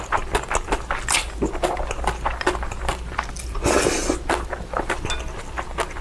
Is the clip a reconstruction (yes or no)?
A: no